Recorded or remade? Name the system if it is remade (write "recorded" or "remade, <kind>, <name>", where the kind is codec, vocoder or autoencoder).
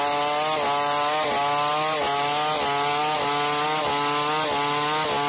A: recorded